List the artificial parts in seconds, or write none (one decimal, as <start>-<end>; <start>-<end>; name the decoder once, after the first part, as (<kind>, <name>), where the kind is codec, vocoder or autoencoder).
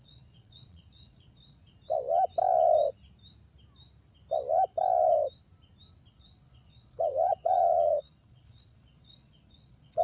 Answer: 0.0-1.6 (vocoder, Vocos); 6.1-10.0